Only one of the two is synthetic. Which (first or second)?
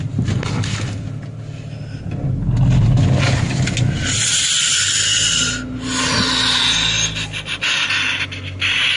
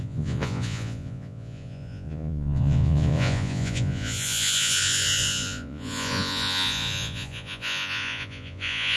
second